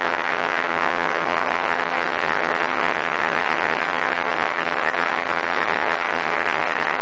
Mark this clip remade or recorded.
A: remade